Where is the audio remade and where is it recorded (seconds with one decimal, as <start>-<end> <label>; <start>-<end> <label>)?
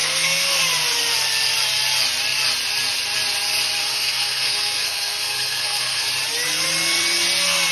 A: 0.0-0.5 remade; 0.5-3.8 recorded; 3.8-6.1 remade; 6.1-7.7 recorded